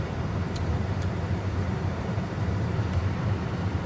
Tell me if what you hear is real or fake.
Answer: fake